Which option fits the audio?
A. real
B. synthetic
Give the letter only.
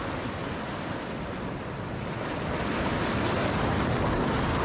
A